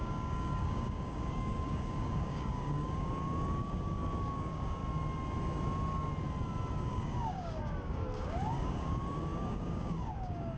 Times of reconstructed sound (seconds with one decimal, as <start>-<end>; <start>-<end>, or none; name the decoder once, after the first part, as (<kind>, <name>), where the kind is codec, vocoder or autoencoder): 0.0-4.8 (codec, DAC); 6.7-10.6